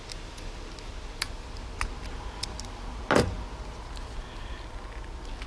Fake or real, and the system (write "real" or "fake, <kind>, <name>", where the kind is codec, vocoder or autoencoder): real